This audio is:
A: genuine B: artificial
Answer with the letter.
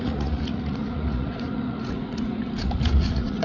B